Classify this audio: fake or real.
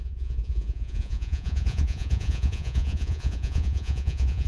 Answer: fake